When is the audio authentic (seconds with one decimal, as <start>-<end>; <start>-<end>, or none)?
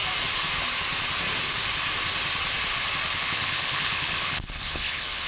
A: 0.0-3.2